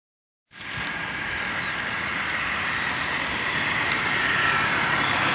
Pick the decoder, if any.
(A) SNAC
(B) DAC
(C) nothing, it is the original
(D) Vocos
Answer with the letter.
C